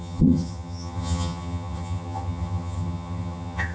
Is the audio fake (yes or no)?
yes